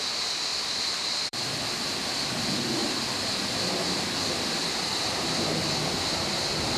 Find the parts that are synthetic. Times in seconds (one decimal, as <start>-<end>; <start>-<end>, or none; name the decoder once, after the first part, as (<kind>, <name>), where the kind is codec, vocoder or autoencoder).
0.5-1.7 (vocoder, BigVGAN v2)